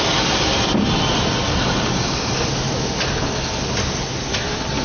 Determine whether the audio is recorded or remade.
recorded